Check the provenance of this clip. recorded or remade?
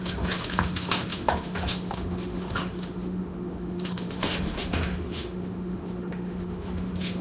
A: remade